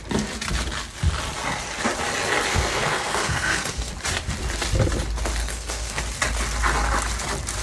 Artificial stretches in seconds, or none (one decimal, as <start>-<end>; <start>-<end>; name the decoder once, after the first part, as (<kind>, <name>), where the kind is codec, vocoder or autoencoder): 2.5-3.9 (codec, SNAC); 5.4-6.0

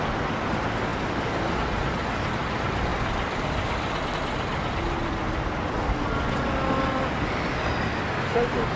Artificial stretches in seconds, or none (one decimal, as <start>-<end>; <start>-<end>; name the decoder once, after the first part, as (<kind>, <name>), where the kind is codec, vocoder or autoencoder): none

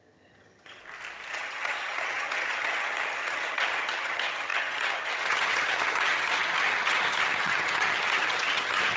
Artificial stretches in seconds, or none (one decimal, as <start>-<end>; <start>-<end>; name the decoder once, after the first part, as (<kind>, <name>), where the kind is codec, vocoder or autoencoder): 0.0-0.8 (vocoder, HiFi-GAN); 1.3-9.0

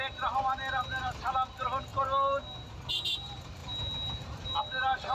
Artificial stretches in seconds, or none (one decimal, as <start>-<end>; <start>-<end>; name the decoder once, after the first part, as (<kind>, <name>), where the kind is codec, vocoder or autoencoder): none

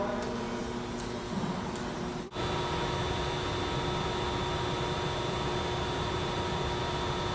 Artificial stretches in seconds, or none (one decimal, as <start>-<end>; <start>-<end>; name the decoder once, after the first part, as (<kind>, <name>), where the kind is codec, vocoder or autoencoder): none

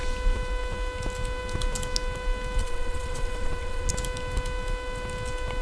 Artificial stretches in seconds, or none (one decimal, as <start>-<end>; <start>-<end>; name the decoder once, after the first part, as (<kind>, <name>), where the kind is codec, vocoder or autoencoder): 2.6-3.9 (vocoder, WaveNeXt)

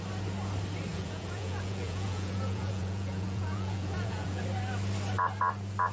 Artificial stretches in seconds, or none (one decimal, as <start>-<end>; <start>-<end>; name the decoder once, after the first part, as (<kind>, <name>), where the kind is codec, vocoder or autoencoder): 0.9-4.4 (vocoder, Vocos)

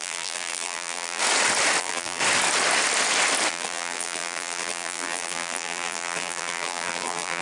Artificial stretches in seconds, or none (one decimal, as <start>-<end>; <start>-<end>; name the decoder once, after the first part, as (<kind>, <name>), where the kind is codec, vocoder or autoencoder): 0.0-1.2 (vocoder, BigVGAN v2); 1.8-2.2; 3.5-7.4